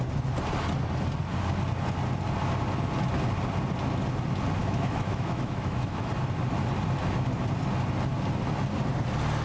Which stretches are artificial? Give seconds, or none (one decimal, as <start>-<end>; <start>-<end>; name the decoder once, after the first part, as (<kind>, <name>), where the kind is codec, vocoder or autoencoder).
4.6-6.1 (autoencoder, DAC-VAE)